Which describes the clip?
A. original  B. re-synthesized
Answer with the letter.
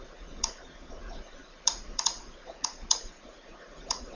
B